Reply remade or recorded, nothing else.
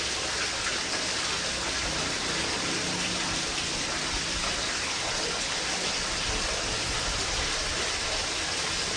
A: recorded